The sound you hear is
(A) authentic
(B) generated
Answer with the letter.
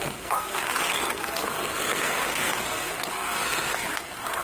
B